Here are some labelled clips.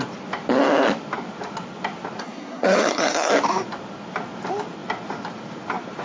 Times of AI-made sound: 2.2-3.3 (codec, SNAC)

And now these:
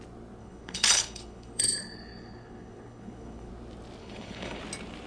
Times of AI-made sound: 0.4-3.5 (codec, HILCodec); 4.0-4.6

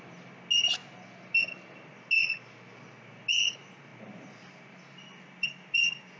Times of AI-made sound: none

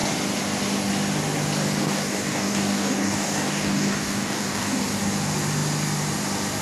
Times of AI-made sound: 1.8-4.8 (codec, DAC)

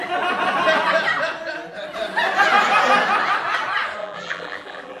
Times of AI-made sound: 4.0-5.0 (vocoder, BigVGAN v2)

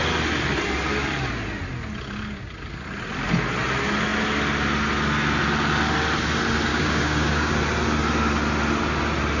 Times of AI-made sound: 6.7-7.5 (codec, DAC)

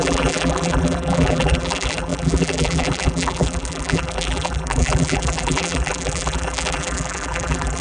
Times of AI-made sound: 0.0-7.8 (vocoder, BigVGAN v2)

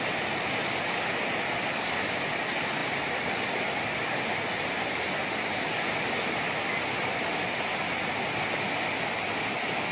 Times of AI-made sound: none